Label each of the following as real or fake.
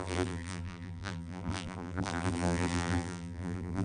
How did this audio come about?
fake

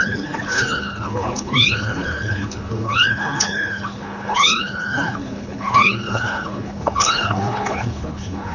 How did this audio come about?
fake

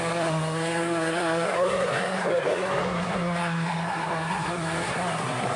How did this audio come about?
fake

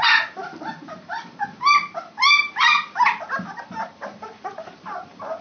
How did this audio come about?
real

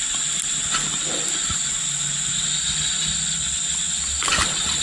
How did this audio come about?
real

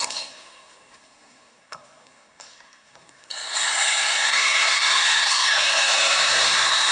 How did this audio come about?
fake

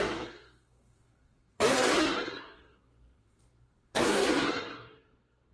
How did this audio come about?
fake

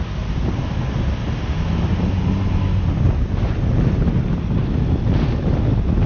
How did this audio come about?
real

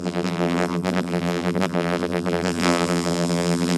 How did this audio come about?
fake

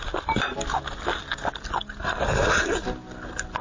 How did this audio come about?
real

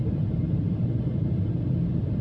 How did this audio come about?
fake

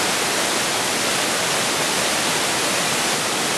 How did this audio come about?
real